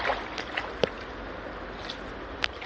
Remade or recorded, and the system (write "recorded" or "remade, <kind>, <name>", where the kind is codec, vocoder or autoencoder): recorded